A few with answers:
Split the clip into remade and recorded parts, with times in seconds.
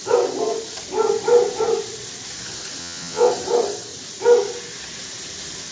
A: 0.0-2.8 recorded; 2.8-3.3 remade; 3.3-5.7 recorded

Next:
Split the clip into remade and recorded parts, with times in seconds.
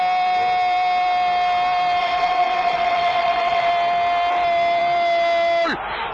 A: 0.0-2.0 recorded; 2.0-3.7 remade; 3.7-6.1 recorded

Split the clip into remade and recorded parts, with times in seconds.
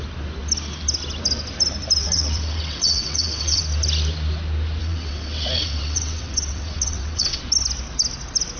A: 0.0-2.0 recorded; 2.0-3.6 remade; 3.6-4.8 recorded; 4.8-7.4 remade; 7.4-8.6 recorded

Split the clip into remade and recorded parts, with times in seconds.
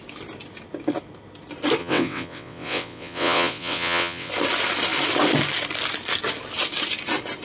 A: 0.0-1.8 recorded; 1.8-4.3 remade; 4.3-7.4 recorded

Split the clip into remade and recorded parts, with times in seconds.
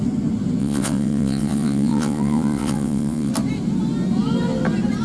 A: 0.0-0.6 recorded; 0.6-3.3 remade; 3.3-5.0 recorded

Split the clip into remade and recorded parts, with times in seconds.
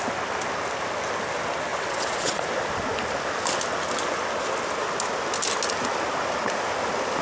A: 0.0-1.7 recorded; 1.7-2.4 remade; 2.4-7.2 recorded